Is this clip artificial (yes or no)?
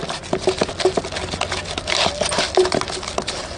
no